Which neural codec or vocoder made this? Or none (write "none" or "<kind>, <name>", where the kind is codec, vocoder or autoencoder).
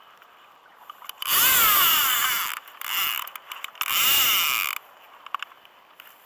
none